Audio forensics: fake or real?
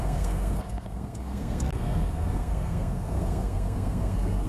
fake